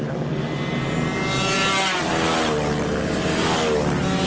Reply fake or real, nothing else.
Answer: real